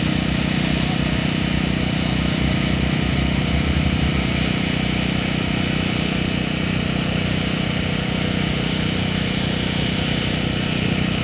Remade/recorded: recorded